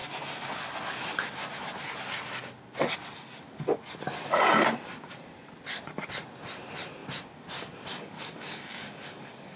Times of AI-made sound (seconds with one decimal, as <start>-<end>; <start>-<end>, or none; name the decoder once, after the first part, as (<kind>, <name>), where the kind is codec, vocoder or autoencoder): 7.9-9.6 (codec, DAC)